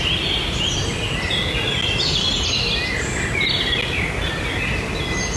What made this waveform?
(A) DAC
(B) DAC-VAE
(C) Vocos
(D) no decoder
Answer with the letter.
D